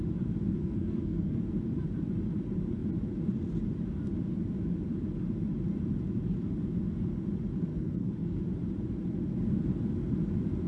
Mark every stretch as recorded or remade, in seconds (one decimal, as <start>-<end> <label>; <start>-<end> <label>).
0.0-0.6 recorded; 0.6-1.4 remade; 1.4-7.7 recorded; 7.7-8.4 remade; 8.4-10.7 recorded